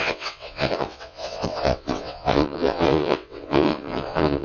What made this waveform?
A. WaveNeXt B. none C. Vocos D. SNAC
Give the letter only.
A